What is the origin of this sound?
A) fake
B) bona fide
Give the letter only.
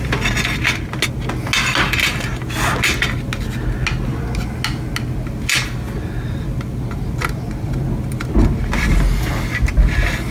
B